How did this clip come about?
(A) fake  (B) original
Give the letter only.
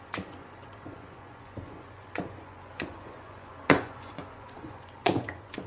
A